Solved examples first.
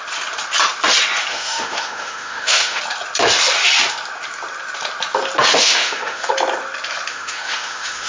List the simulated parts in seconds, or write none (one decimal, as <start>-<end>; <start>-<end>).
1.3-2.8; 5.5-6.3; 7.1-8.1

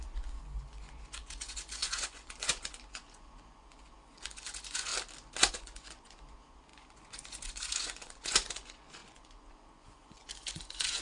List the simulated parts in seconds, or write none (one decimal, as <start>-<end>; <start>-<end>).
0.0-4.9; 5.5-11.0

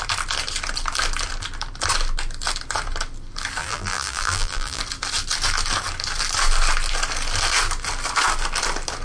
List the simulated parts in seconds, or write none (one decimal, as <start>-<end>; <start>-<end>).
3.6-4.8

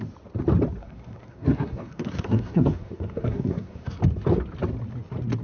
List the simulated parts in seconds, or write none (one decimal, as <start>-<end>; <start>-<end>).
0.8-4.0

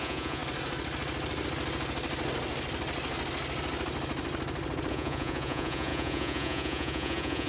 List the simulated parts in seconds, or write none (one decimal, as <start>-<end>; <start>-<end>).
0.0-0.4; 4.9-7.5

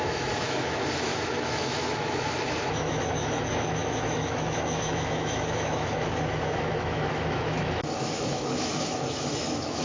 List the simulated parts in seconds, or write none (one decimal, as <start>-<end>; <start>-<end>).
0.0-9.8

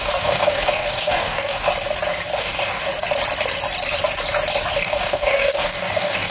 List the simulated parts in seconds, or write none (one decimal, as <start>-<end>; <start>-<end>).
0.0-1.7; 2.4-2.9; 4.7-6.3